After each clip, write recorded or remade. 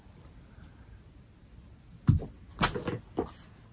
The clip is recorded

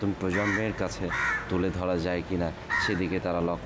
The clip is recorded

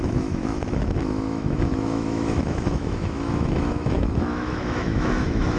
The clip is remade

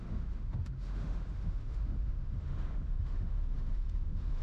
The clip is remade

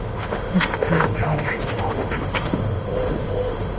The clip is remade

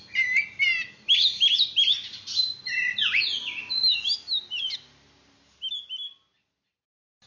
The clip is recorded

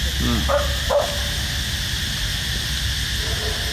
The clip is recorded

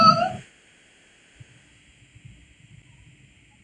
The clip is recorded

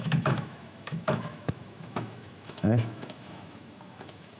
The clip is remade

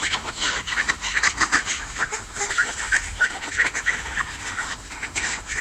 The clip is remade